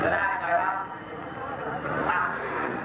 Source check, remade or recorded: remade